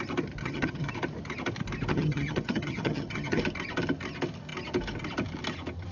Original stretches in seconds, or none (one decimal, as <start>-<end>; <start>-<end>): 0.0-0.4; 0.9-1.9; 3.4-5.9